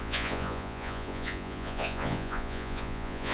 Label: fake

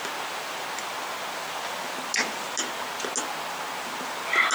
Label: real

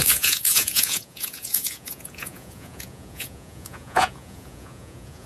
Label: fake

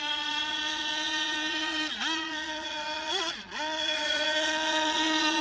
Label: fake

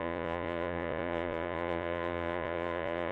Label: fake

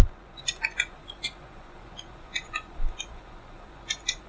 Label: fake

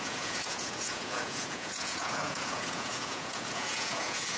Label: fake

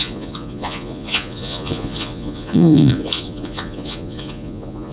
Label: fake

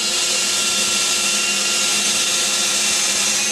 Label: real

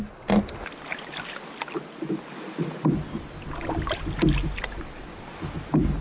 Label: real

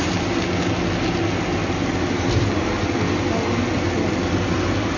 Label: real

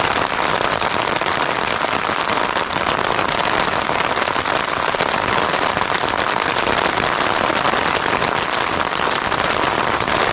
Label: real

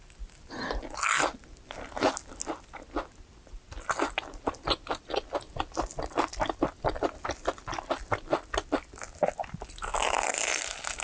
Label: real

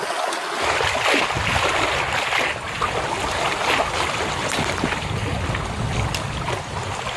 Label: real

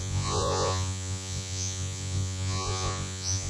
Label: fake